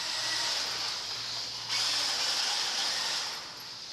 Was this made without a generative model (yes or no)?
yes